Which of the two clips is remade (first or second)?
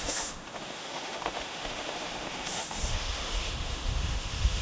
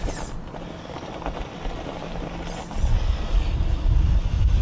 first